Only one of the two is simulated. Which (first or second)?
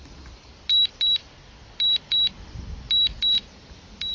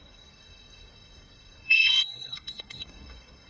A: second